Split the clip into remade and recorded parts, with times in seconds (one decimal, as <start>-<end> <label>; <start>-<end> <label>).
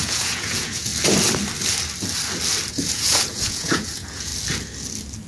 0.0-0.9 remade; 0.9-2.7 recorded; 2.7-4.3 remade; 4.3-5.3 recorded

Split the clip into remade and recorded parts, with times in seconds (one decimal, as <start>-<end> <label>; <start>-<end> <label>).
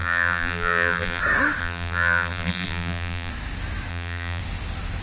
0.0-1.2 remade; 1.2-1.6 recorded; 1.6-3.3 remade; 3.3-3.9 recorded; 3.9-4.4 remade; 4.4-5.0 recorded